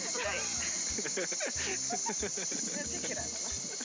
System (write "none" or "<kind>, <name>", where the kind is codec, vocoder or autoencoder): none